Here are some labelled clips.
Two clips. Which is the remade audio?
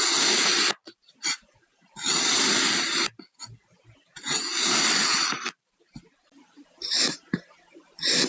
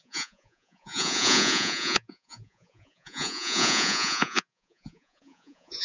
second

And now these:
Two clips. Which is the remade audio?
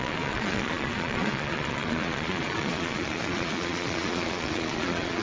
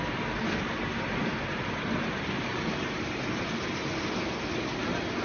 first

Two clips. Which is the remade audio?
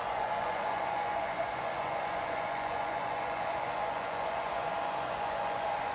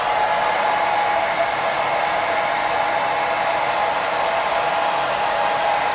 first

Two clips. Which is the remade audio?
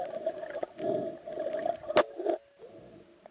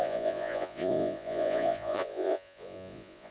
second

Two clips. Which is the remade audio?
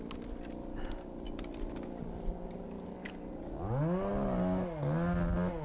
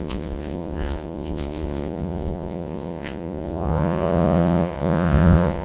second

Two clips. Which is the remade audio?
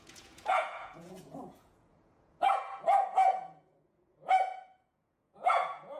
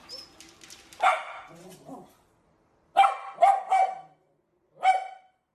first